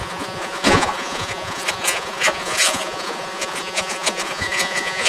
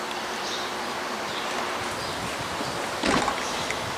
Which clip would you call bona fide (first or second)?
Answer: second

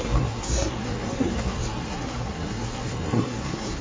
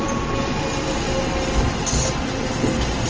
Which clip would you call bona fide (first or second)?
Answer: second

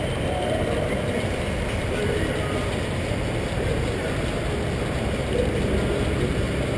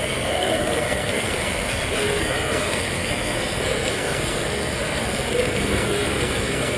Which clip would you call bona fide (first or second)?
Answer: first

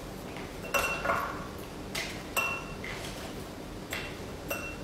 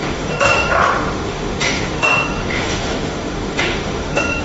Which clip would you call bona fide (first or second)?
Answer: first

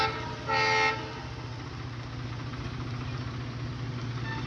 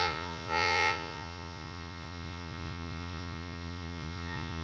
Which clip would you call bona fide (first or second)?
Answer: first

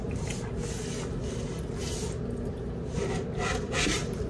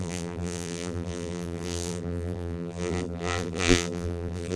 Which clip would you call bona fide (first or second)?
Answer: first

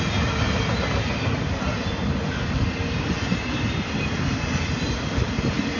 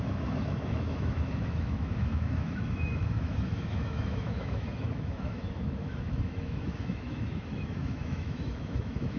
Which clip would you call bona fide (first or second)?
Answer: first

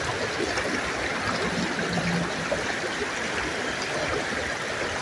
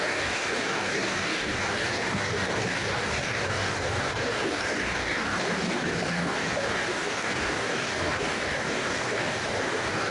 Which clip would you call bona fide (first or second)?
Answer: first